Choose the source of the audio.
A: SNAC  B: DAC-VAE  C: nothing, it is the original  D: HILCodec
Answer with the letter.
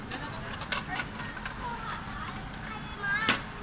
C